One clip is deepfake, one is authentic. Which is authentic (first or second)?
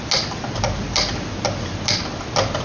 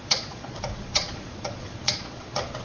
first